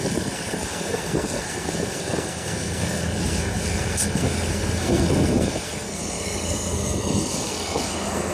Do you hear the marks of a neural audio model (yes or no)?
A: yes